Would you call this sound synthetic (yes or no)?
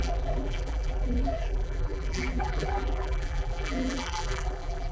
yes